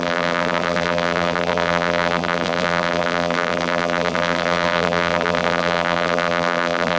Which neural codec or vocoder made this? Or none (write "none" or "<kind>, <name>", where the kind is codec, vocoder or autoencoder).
vocoder, BigVGAN v2